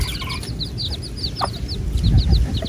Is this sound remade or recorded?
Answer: recorded